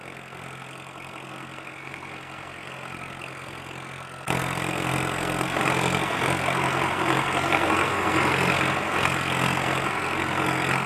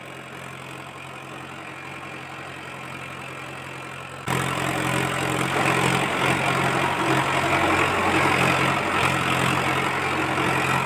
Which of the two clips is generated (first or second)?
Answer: first